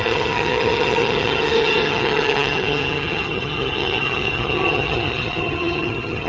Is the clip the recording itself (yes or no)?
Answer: no